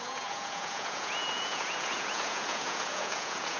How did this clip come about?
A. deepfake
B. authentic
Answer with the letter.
A